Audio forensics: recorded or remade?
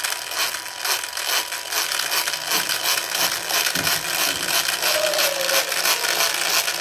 recorded